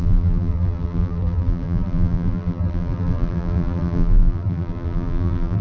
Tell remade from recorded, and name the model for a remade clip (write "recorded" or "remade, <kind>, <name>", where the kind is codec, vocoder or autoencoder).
remade, vocoder, BigVGAN v2